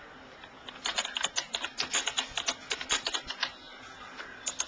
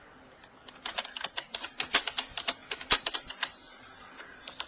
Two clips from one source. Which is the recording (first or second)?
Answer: first